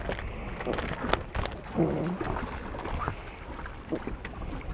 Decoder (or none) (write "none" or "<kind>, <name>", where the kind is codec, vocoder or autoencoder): none